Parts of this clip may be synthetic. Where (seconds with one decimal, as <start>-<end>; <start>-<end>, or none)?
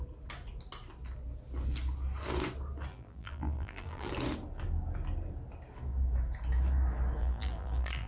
2.9-4.1; 7.2-8.1